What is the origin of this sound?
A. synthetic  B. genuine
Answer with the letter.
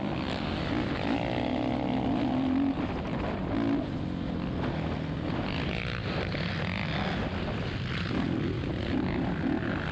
B